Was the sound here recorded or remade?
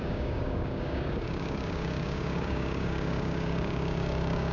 remade